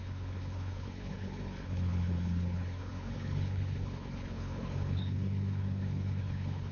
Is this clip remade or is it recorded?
remade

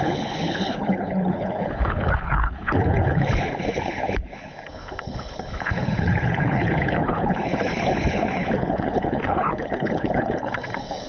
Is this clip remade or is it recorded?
remade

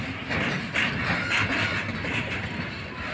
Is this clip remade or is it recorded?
recorded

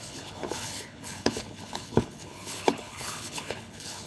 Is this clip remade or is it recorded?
remade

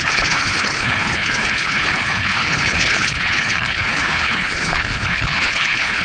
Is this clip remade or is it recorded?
remade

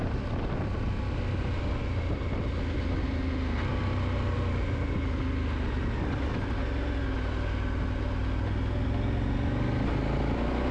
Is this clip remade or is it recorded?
recorded